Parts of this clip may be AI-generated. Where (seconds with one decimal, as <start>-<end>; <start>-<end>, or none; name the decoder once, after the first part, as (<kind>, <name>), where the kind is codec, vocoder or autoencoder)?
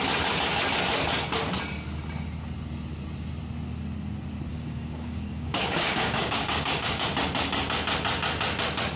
4.5-7.1 (codec, DAC)